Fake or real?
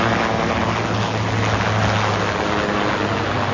real